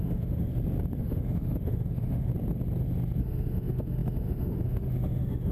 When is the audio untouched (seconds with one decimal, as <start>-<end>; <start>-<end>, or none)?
0.5-1.0; 2.3-3.2